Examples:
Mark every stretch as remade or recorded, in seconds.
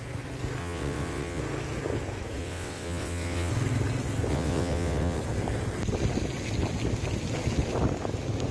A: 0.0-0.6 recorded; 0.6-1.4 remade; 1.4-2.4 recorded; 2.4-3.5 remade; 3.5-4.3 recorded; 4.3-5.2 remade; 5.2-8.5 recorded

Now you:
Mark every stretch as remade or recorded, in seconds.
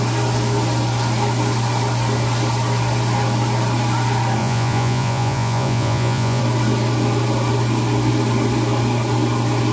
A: 0.0-4.4 recorded; 4.4-6.4 remade; 6.4-9.7 recorded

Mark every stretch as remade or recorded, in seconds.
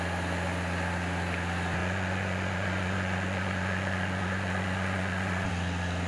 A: 0.0-1.8 recorded; 1.8-5.5 remade; 5.5-6.1 recorded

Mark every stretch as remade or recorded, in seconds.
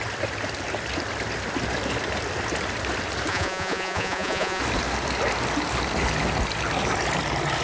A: 0.0-3.3 recorded; 3.3-4.6 remade; 4.6-7.6 recorded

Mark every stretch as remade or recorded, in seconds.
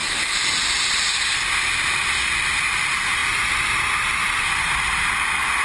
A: 0.0-5.6 recorded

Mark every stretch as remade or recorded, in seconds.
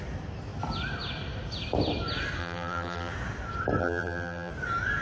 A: 0.0-2.4 recorded; 2.4-3.1 remade; 3.1-3.8 recorded; 3.8-4.5 remade; 4.5-5.0 recorded